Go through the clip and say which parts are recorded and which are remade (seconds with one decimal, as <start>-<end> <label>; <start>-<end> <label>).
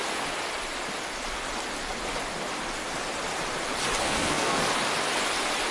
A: 0.0-4.0 recorded; 4.0-4.6 remade; 4.6-5.7 recorded